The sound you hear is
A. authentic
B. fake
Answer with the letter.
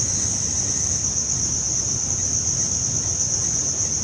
A